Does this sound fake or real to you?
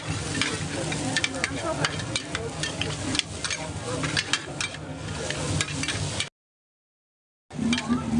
real